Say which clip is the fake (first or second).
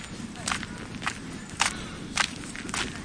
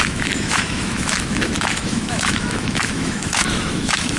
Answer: second